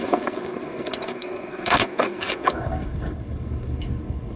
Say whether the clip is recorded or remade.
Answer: remade